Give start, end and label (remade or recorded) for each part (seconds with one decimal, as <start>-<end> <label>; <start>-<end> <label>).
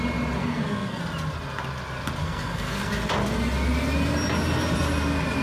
0.0-0.4 recorded; 0.4-1.0 remade; 1.0-2.2 recorded; 2.2-2.9 remade; 2.9-5.4 recorded